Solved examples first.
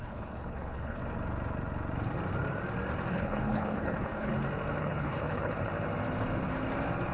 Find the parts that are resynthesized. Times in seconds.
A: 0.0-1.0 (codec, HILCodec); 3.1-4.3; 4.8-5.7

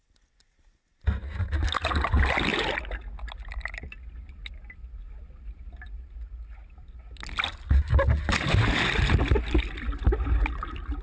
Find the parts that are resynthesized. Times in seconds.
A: none

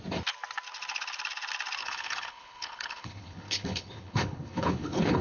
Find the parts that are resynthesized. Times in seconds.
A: 1.8-5.2 (codec, HILCodec)